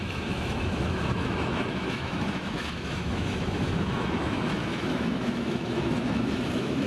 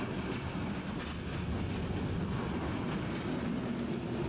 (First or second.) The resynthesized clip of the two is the first